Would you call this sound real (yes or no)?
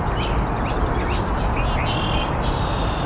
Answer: yes